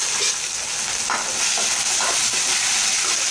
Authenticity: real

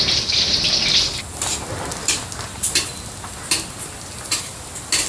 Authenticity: real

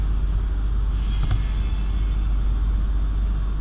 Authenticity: real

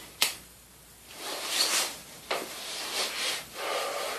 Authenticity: fake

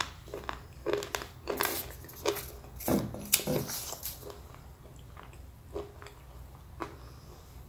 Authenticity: real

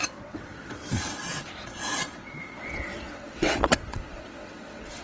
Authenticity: fake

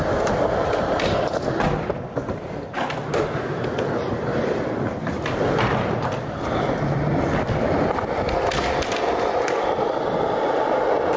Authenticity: real